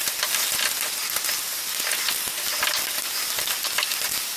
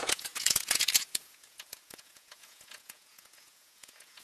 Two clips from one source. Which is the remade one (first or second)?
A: second